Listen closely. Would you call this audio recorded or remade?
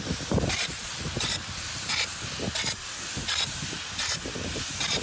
recorded